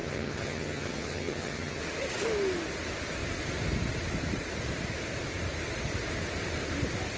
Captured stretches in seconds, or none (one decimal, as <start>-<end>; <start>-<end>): 1.8-7.2